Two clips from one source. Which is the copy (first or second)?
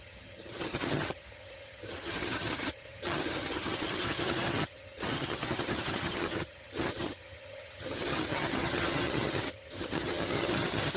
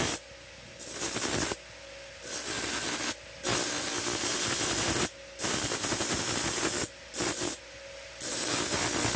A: first